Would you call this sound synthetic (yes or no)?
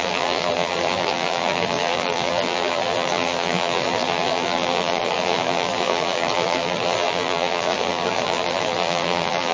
yes